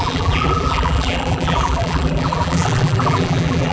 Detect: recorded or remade remade